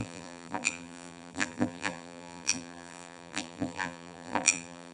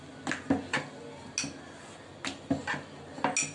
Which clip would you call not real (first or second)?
first